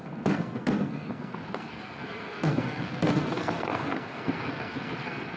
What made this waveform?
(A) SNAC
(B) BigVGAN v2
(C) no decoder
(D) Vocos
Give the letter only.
A